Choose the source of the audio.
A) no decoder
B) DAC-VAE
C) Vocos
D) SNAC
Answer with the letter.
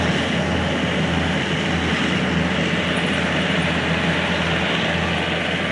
A